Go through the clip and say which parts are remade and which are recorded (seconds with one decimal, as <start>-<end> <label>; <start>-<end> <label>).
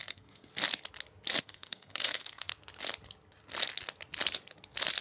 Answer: 0.0-0.5 remade; 0.5-1.4 recorded; 1.4-2.5 remade; 2.5-5.0 recorded